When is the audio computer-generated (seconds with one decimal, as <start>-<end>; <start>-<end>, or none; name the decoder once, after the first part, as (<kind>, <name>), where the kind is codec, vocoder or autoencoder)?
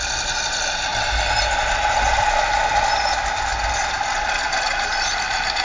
none